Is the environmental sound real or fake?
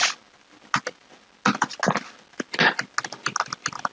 real